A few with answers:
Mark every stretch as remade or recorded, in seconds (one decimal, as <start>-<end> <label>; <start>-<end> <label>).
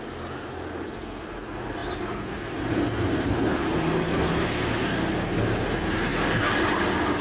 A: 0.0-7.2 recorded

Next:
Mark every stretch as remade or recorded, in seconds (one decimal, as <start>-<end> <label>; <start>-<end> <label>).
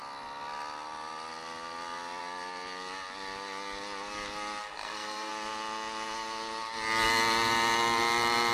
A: 0.0-4.6 recorded; 4.6-5.3 remade; 5.3-8.5 recorded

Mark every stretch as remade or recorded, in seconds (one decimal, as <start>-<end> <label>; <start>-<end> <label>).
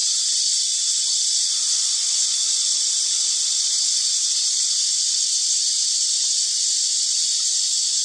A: 0.0-8.0 recorded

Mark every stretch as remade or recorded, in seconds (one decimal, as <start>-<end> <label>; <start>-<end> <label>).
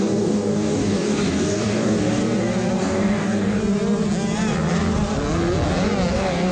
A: 0.0-2.2 remade; 2.2-2.8 recorded; 2.8-3.6 remade; 3.6-6.1 recorded; 6.1-6.5 remade